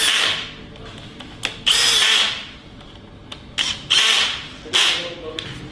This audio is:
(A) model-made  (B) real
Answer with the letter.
B